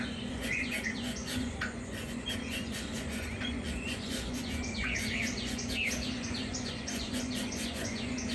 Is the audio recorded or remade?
remade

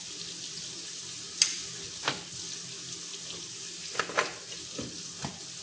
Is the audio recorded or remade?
recorded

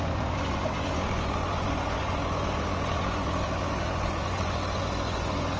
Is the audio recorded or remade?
remade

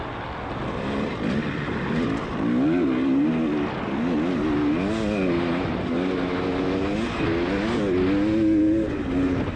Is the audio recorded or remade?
recorded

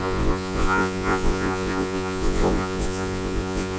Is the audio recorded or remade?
remade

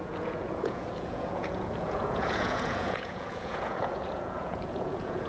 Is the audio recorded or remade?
remade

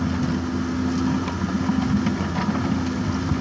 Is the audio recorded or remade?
recorded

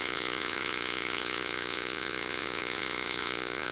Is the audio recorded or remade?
remade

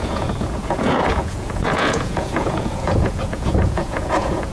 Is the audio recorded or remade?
remade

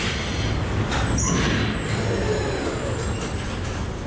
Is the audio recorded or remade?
recorded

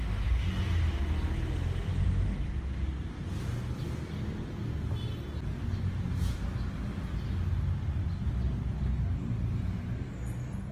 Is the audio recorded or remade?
recorded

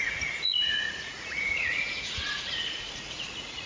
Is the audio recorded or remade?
remade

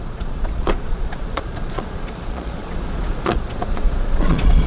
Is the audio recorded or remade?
remade